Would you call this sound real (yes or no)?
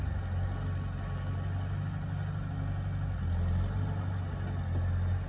yes